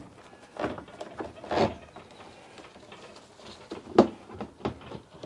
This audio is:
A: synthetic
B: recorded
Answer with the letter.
B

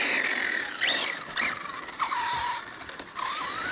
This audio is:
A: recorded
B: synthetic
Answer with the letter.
A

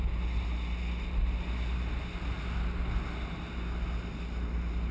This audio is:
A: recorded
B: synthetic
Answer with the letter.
A